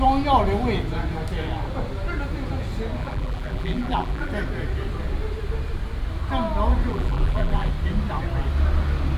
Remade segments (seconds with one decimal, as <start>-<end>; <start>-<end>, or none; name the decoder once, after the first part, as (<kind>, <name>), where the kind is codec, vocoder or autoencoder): 3.0-4.3 (vocoder, BigVGAN v2); 6.9-7.7